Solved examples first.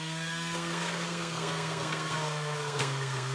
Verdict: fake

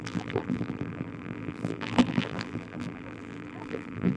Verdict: fake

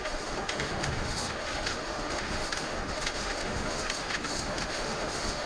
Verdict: fake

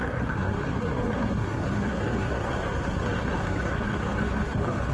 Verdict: fake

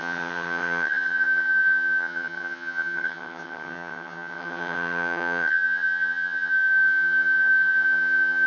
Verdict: fake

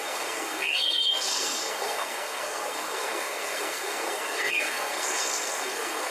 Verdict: fake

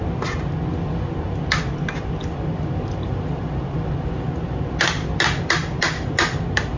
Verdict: real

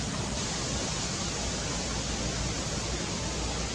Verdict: real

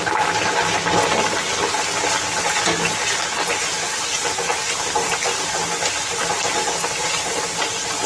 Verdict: real